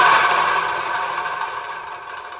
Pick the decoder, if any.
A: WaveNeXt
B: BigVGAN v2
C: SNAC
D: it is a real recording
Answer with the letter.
B